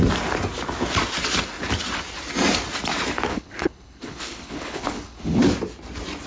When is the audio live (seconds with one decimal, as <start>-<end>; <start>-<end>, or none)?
0.0-3.3; 5.4-6.3